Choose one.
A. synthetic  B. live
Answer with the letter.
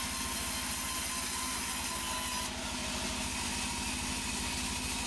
B